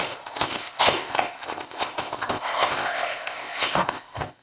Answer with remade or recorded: remade